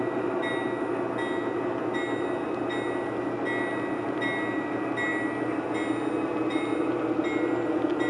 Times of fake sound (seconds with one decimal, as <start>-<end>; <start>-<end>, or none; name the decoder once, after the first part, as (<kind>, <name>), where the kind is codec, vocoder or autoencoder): none